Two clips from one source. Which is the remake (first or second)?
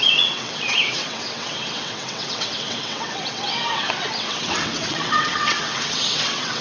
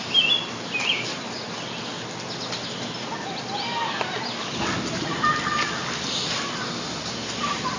first